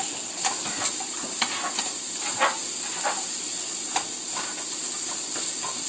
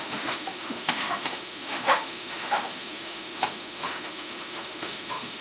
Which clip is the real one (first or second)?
first